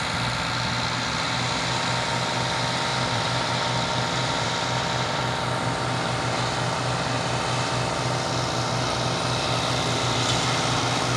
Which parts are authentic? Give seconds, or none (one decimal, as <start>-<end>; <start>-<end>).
0.0-2.9; 3.5-4.2; 5.2-11.2